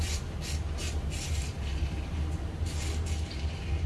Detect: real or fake fake